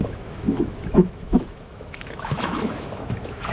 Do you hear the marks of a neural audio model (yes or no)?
yes